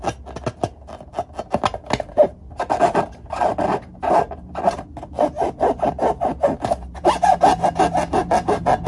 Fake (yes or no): no